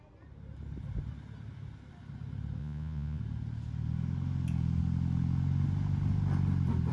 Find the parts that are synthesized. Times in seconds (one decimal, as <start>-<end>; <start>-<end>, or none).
2.6-3.2